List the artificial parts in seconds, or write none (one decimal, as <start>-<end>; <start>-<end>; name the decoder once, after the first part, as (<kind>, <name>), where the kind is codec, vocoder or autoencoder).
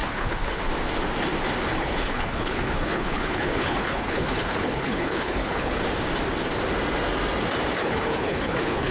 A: 0.0-0.6 (codec, HILCodec); 1.7-5.8; 7.8-8.9